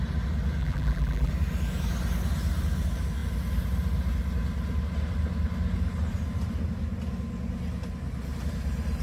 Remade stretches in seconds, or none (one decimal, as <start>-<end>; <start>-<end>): 0.6-1.3